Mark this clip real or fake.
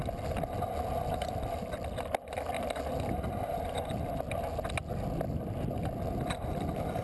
real